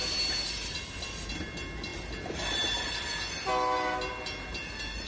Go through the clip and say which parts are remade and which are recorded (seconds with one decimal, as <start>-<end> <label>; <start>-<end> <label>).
0.0-5.1 recorded